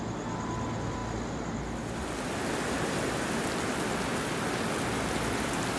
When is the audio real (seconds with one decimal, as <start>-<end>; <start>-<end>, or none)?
0.0-5.8